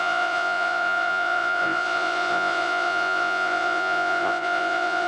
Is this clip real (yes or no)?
no